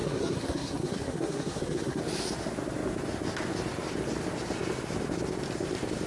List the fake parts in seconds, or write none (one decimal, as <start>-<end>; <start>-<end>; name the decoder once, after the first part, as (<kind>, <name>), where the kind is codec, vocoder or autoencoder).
0.0-2.0 (codec, SNAC)